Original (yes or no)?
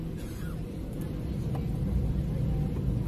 yes